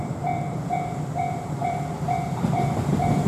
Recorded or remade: remade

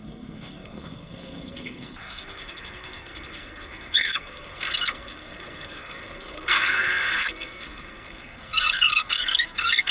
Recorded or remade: remade